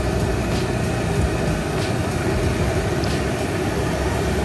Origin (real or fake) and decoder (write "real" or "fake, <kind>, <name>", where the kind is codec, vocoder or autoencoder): real